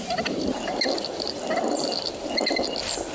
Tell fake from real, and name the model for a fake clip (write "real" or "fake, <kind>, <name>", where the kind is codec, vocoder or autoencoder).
real